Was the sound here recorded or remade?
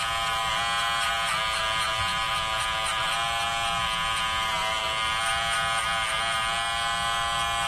recorded